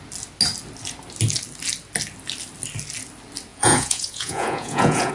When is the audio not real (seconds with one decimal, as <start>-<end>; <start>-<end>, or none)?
3.5-5.1